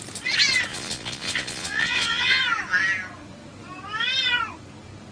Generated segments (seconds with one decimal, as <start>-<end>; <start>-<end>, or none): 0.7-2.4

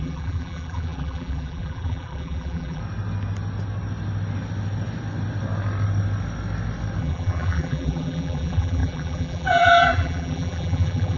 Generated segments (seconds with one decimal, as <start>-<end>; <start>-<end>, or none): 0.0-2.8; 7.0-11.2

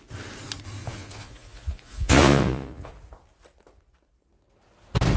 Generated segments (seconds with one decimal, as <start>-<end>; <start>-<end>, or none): 0.8-2.9

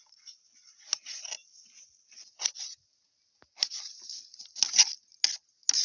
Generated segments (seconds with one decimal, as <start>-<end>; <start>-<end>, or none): none

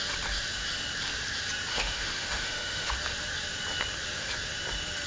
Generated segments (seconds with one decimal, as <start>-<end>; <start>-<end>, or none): 1.7-2.9

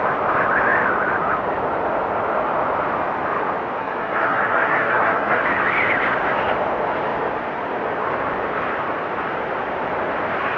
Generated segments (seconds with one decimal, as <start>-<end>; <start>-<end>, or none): 3.8-5.4

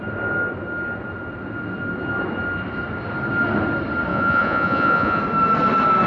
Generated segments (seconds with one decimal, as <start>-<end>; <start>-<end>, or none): 4.1-5.2